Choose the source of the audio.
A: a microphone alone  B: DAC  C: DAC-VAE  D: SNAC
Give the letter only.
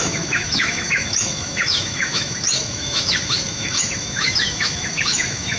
C